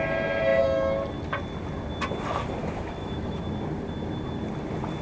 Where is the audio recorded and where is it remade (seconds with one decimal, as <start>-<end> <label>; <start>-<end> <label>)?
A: 0.0-2.6 recorded; 2.6-3.4 remade; 3.4-5.0 recorded